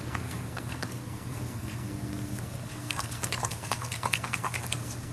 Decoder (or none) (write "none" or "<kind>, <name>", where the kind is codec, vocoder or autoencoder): codec, SNAC